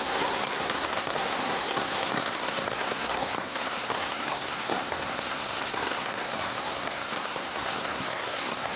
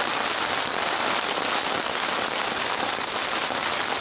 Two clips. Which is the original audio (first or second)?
second